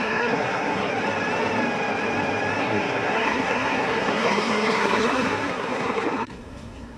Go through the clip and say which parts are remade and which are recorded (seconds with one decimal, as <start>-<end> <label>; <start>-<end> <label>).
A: 0.0-0.9 remade; 0.9-2.6 recorded; 2.6-7.0 remade